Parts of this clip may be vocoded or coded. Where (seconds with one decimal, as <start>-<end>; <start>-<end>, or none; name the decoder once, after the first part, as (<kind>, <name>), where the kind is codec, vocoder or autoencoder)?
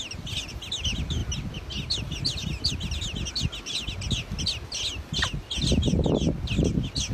none